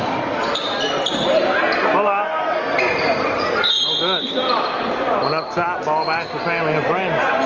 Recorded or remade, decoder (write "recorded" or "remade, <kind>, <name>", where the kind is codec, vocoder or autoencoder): recorded